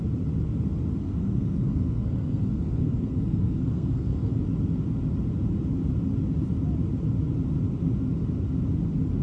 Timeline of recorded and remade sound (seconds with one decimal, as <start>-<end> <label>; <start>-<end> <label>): 0.0-1.0 recorded; 1.0-4.3 remade; 4.3-9.2 recorded